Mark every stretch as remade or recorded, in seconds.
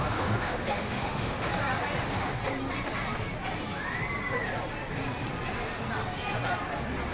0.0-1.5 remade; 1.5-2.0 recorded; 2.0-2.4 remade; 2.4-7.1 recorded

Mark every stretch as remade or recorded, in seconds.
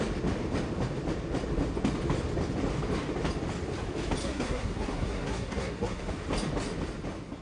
0.0-4.2 recorded; 4.2-6.1 remade; 6.1-7.4 recorded